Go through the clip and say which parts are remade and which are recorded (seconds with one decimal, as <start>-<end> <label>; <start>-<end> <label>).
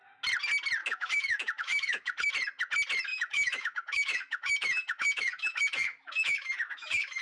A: 0.0-0.8 recorded; 0.8-2.3 remade; 2.3-3.1 recorded; 3.1-7.2 remade